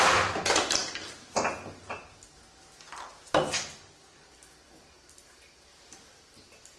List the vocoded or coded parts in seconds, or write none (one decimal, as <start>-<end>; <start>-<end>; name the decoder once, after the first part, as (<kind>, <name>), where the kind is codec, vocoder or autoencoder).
3.6-4.2 (codec, DAC)